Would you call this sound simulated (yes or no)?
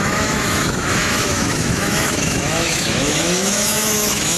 yes